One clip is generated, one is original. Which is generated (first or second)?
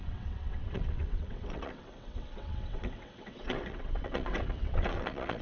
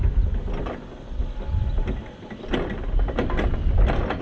first